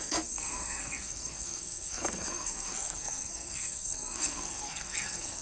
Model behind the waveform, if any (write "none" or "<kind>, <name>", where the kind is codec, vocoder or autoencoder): codec, SNAC